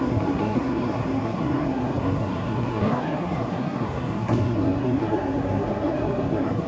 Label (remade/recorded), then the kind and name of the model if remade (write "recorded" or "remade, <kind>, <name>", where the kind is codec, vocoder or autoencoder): remade, codec, SNAC